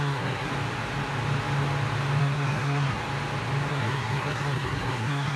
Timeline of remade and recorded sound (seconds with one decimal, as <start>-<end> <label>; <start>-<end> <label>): 0.0-0.5 remade; 0.5-2.2 recorded; 2.2-3.0 remade; 3.0-3.7 recorded; 3.7-5.4 remade